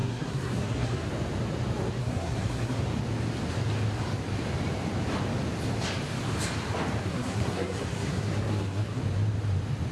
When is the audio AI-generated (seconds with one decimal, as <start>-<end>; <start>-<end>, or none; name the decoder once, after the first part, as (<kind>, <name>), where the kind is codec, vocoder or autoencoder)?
0.0-1.1 (codec, SNAC); 2.0-2.8; 7.0-9.0